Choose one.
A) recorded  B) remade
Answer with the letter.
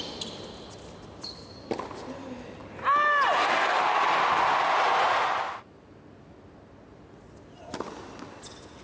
A